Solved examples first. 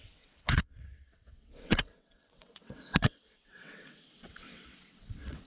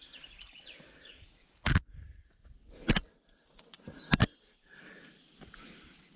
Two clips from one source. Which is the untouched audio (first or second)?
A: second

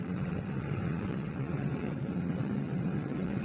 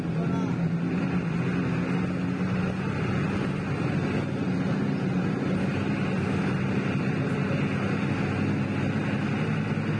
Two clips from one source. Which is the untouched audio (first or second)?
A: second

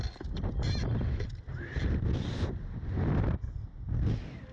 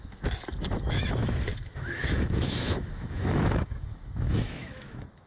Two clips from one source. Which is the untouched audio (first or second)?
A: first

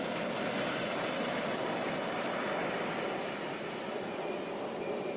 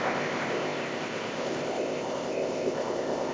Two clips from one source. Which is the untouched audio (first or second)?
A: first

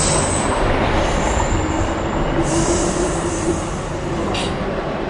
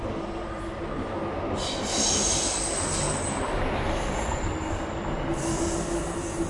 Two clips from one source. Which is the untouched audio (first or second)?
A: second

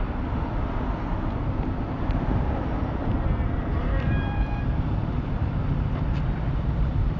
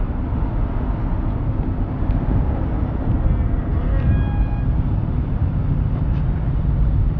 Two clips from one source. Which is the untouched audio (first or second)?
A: second